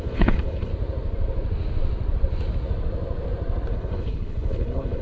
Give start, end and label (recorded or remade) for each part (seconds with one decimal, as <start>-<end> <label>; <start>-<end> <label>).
0.0-0.7 remade; 0.7-3.7 recorded; 3.7-5.0 remade

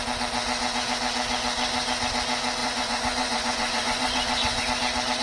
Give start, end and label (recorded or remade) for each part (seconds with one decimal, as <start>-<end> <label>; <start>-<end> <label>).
0.0-2.6 recorded; 2.6-4.6 remade; 4.6-5.2 recorded

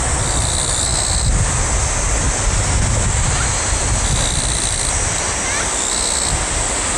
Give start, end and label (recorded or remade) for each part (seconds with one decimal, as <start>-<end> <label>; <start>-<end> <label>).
0.0-7.0 recorded

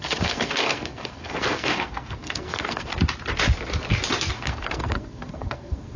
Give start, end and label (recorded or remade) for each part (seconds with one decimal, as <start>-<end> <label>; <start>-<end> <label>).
0.0-2.9 remade; 2.9-4.3 recorded; 4.3-6.0 remade